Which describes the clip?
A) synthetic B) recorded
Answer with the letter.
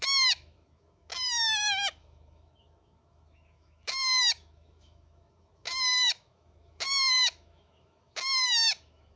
A